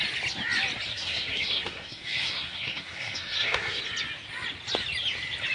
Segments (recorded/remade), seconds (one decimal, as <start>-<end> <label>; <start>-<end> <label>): 0.0-0.9 recorded; 0.9-3.8 remade; 3.8-5.5 recorded